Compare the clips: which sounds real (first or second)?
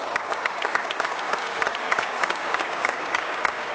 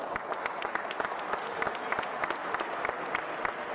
second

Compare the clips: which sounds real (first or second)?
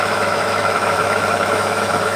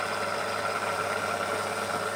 second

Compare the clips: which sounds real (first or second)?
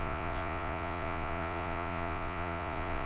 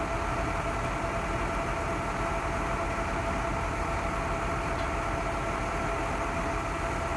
second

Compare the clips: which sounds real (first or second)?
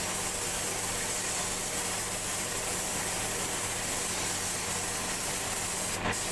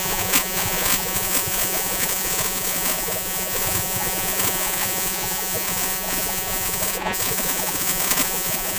first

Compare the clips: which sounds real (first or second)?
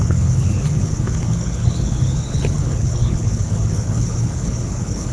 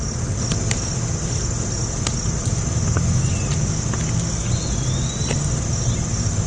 second